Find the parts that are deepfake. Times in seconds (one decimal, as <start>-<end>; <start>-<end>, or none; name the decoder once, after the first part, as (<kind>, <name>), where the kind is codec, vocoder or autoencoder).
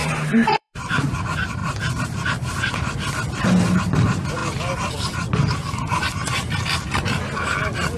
0.0-0.8 (vocoder, BigVGAN v2); 1.6-2.6